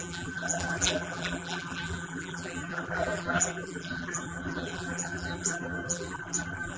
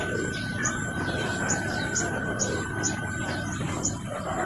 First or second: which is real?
second